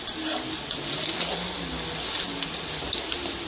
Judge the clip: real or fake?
real